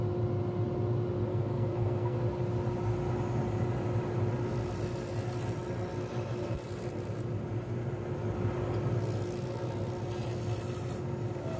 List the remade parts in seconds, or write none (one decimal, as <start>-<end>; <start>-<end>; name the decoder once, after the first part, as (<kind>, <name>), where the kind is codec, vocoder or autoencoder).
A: 1.3-2.2 (codec, SNAC)